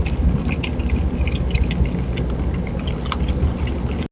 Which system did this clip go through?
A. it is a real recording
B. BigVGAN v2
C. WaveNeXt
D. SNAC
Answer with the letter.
A